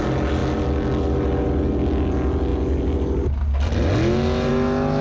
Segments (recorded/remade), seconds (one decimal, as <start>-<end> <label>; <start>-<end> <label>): 0.0-5.0 recorded